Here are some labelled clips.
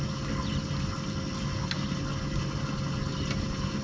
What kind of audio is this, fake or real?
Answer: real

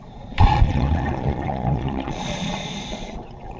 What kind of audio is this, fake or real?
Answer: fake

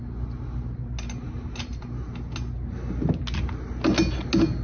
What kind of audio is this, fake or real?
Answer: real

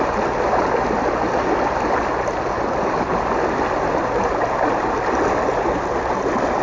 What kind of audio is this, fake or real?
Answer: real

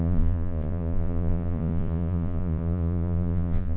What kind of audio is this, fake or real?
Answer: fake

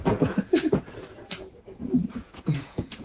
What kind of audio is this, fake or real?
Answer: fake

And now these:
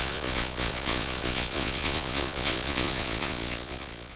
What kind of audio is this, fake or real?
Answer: fake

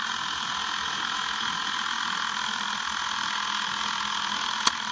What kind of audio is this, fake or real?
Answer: real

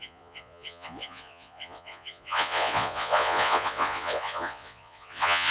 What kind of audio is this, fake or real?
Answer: fake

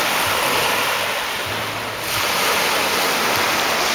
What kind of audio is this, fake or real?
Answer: real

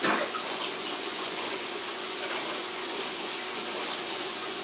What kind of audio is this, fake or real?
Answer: fake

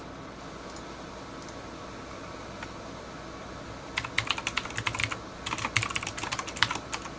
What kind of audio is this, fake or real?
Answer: real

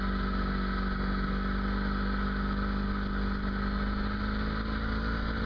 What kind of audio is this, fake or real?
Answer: real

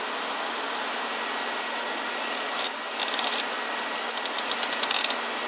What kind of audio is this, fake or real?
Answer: real